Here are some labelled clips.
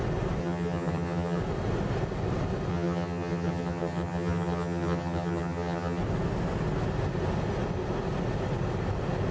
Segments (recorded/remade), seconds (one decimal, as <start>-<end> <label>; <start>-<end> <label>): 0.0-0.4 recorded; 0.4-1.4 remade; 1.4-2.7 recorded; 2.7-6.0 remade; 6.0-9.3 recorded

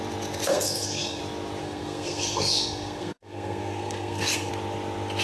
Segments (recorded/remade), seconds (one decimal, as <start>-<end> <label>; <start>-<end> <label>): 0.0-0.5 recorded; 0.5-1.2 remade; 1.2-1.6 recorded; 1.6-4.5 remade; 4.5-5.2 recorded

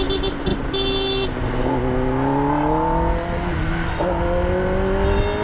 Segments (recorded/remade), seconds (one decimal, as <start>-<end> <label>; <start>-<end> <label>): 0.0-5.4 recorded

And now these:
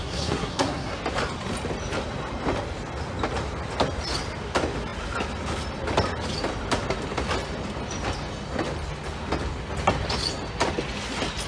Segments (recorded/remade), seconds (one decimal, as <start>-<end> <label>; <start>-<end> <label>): 0.0-1.0 remade; 1.0-11.5 recorded